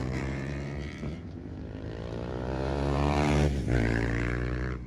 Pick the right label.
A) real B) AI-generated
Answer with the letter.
B